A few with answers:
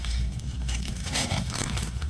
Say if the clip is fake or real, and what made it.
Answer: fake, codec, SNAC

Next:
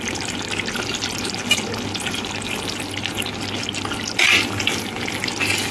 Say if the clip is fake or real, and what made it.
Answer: real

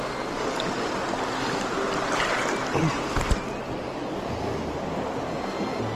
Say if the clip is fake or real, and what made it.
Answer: real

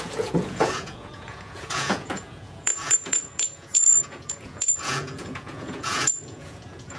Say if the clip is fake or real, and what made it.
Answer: fake, vocoder, Vocos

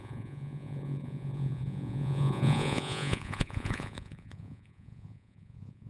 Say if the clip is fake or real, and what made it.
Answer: fake, vocoder, Vocos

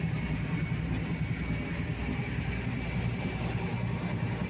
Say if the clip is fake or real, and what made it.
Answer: real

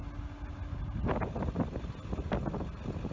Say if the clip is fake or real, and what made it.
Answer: real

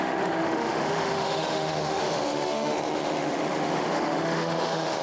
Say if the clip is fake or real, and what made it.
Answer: fake, autoencoder, DAC-VAE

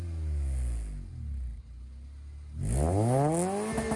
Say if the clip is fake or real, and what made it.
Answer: real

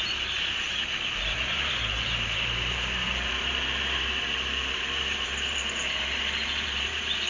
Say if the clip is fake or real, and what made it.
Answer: fake, vocoder, BigVGAN v2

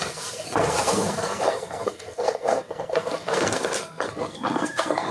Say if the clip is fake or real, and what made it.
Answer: fake, codec, SNAC